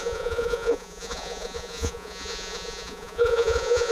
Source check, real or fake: fake